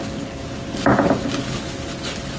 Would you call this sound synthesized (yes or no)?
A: no